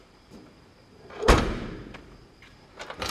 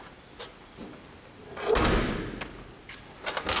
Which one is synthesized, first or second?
first